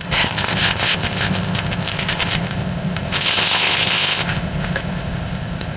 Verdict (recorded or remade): remade